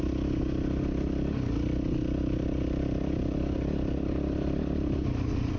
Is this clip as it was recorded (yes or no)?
yes